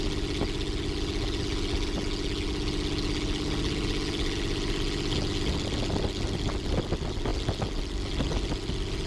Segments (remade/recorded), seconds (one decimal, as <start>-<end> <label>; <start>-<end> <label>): 0.0-9.1 recorded